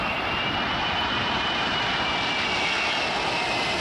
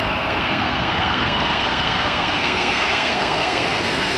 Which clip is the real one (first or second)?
first